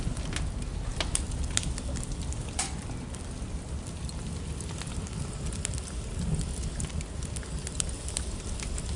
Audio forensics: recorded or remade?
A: recorded